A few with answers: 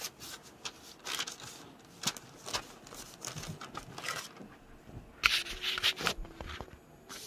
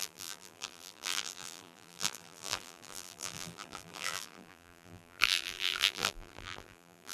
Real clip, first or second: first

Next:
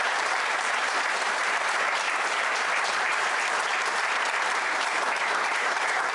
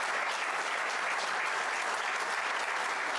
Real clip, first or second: second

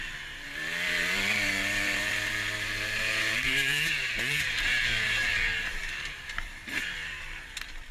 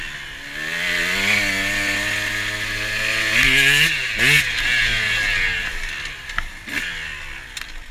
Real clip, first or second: second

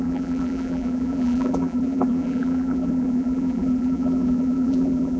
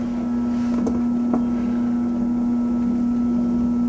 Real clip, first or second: second